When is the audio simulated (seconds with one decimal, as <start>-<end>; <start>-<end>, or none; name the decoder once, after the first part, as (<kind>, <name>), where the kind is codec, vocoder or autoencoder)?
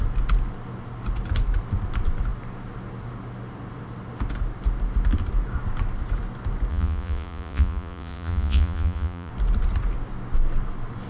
6.7-9.3 (vocoder, Vocos)